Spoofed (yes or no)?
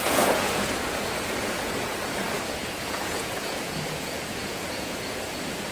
yes